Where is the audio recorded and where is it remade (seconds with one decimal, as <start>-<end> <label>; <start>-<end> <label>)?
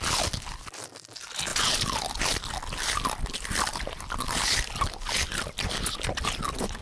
0.0-6.8 recorded